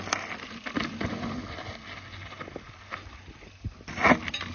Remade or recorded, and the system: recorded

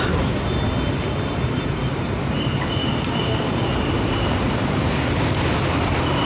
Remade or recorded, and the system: remade, vocoder, BigVGAN v2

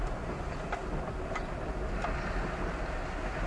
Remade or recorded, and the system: recorded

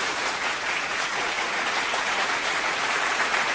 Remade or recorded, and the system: remade, vocoder, Vocos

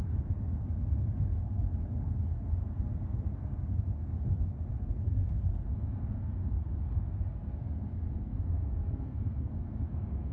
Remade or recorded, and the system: remade, codec, SNAC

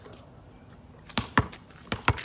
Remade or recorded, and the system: recorded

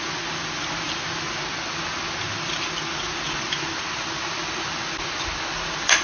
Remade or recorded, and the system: recorded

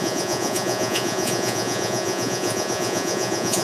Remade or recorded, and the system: remade, vocoder, Vocos